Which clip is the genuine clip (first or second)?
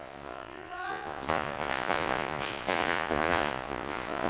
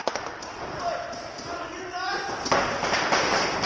second